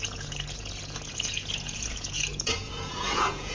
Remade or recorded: remade